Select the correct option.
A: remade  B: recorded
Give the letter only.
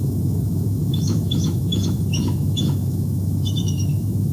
A